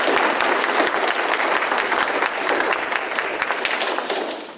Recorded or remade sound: recorded